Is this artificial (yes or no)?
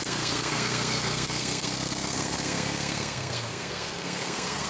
yes